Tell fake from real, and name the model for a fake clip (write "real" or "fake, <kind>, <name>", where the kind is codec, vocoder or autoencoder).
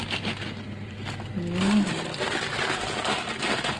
real